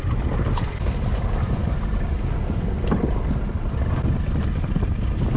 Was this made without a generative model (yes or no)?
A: yes